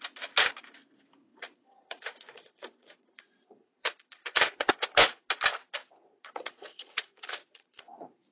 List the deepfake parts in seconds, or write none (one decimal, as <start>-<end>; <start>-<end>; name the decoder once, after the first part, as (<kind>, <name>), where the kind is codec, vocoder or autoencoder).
1.3-4.7 (vocoder, Vocos); 6.0-8.3